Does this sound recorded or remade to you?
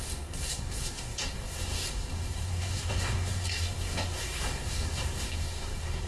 remade